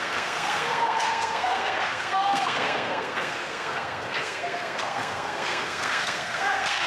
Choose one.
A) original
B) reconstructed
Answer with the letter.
B